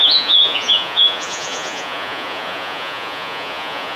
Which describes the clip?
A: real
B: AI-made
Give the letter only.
B